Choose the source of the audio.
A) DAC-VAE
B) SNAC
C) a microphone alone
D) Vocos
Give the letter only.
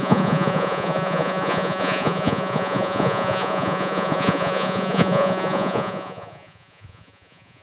D